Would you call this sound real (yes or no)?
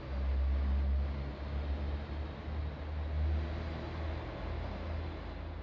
yes